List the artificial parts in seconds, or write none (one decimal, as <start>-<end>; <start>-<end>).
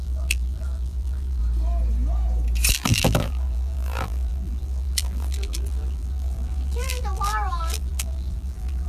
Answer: 0.0-1.4; 2.7-8.9